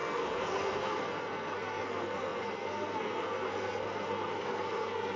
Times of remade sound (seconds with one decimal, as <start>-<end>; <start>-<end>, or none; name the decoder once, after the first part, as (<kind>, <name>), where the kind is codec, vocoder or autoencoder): 0.0-5.2 (codec, SNAC)